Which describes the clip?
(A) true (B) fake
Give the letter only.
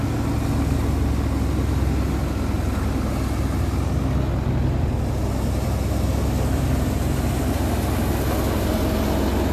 A